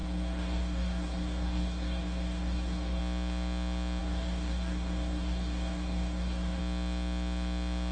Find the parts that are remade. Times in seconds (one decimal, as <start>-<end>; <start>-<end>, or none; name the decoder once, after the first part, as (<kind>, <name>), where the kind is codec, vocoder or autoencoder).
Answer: 0.0-3.0 (codec, DAC); 4.0-6.6